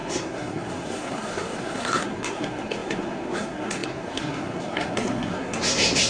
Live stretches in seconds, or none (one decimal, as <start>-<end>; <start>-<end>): none